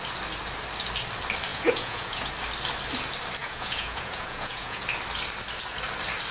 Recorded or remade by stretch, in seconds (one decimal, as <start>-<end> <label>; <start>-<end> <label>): 0.0-1.5 recorded; 1.5-2.3 remade; 2.3-3.4 recorded; 3.4-4.8 remade; 4.8-6.3 recorded